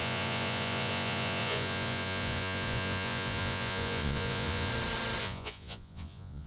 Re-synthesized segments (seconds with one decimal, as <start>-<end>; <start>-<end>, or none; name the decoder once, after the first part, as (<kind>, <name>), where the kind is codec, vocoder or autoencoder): 0.0-4.7 (vocoder, Vocos); 5.2-6.5